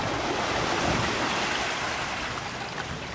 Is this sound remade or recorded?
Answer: recorded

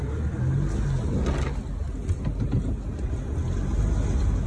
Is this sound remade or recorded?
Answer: recorded